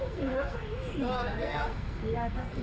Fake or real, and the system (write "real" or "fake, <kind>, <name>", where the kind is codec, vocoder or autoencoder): fake, codec, SNAC